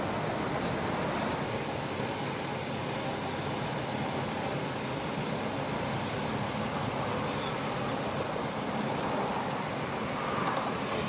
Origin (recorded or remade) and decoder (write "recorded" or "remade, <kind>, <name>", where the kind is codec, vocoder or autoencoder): recorded